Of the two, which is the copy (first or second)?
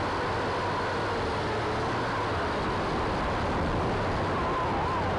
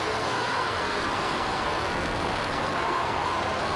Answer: second